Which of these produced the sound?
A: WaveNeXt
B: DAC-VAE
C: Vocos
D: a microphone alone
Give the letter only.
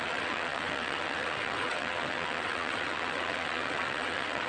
A